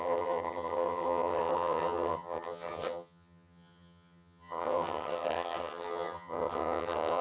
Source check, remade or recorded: remade